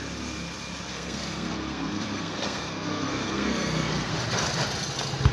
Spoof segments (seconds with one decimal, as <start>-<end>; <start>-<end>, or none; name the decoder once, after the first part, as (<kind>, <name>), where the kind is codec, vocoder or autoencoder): 0.9-4.1 (codec, SNAC)